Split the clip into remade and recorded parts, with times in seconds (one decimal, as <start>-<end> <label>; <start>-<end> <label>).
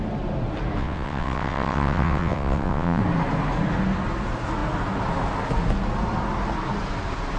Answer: 0.0-0.8 recorded; 0.8-3.0 remade; 3.0-7.4 recorded